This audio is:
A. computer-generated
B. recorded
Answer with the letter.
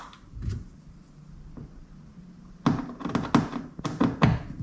B